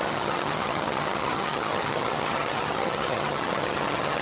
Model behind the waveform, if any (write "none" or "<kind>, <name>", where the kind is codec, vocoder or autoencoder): vocoder, HiFi-GAN